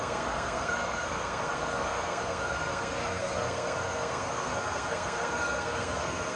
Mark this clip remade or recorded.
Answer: remade